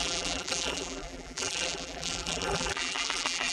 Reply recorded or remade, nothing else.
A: remade